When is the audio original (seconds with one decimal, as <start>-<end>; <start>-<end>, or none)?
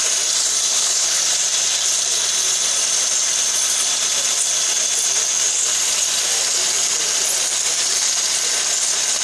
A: 0.0-0.7; 1.2-9.2